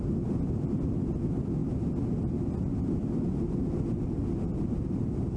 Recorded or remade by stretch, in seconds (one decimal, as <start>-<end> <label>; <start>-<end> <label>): 0.0-5.4 recorded